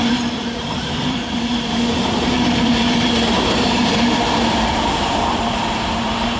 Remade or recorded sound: remade